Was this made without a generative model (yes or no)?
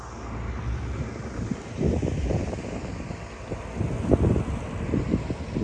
yes